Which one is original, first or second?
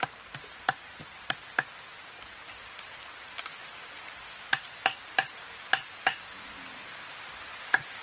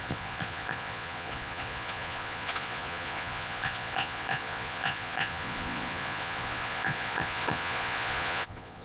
first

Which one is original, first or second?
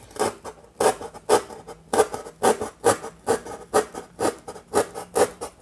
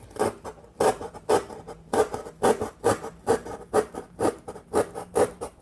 first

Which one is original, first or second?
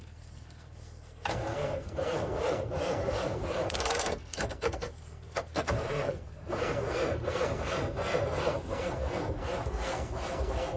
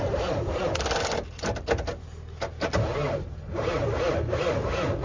second